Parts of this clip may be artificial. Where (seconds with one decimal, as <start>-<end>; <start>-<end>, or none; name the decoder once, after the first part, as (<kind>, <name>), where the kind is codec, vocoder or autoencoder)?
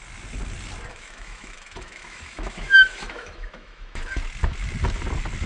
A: 0.9-4.2 (autoencoder, DAC-VAE)